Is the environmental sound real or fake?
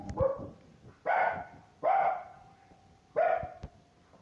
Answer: real